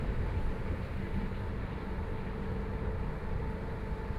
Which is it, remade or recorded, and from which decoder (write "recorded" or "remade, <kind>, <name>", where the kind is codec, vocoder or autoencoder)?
recorded